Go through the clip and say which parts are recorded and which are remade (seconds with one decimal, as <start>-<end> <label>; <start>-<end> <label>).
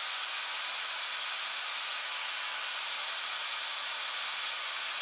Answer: 0.0-5.0 recorded